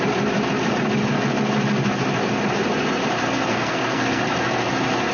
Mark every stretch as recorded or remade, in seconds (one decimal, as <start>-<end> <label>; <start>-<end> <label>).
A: 0.0-3.5 recorded; 3.5-4.2 remade; 4.2-5.1 recorded